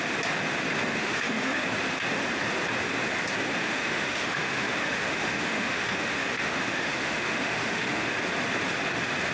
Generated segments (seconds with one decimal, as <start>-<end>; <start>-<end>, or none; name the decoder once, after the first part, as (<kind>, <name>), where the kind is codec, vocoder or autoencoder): 0.9-1.6 (autoencoder, DAC-VAE); 3.6-8.1

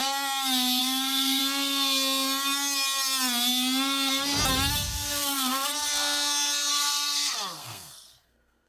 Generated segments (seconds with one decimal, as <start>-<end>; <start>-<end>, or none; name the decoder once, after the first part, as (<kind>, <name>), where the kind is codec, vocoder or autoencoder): 0.8-1.4 (codec, SNAC); 4.7-5.7; 6.7-8.7

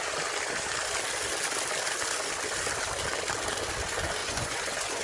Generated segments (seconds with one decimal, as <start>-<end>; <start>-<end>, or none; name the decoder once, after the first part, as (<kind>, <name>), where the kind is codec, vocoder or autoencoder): 4.2-5.0 (vocoder, Vocos)

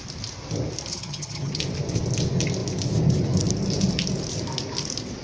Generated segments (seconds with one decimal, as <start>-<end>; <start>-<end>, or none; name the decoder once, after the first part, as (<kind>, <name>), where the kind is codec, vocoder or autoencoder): 0.9-1.6 (vocoder, HiFi-GAN)

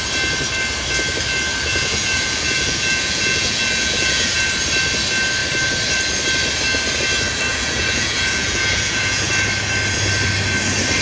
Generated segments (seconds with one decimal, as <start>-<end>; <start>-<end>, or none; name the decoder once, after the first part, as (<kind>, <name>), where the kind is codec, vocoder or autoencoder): 1.7-4.4 (vocoder, Vocos); 7.5-9.3

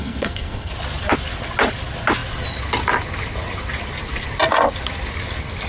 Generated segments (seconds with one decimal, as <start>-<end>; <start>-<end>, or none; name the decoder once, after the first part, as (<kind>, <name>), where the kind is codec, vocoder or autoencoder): 0.0-0.7 (codec, SNAC)